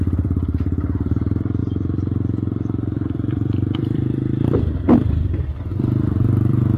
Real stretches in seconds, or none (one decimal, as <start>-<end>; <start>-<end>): none